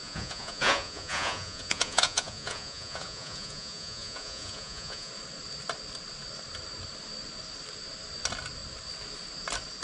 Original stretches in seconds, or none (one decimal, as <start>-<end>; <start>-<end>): 5.1-9.8